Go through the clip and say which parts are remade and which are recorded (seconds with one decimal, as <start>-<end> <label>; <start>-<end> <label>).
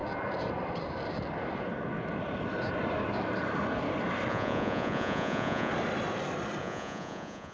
0.0-4.3 recorded; 4.3-5.7 remade; 5.7-6.6 recorded; 6.6-7.5 remade